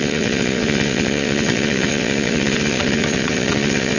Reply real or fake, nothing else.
fake